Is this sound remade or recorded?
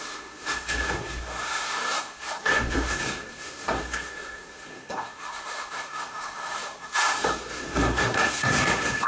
remade